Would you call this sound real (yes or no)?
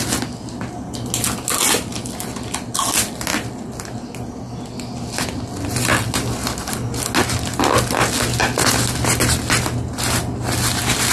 yes